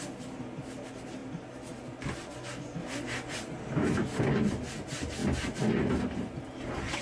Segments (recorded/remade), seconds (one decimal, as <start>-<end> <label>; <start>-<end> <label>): 0.0-7.0 recorded